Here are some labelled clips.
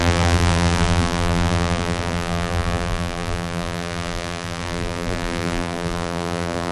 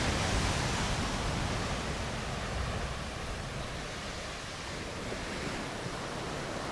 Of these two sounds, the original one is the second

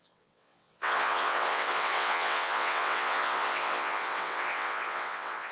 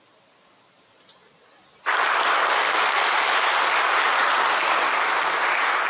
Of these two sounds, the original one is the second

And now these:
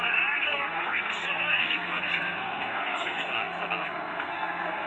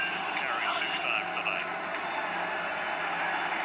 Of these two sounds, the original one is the second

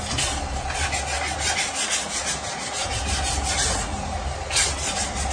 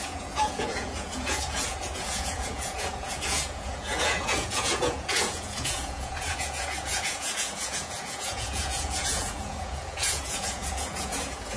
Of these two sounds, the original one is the first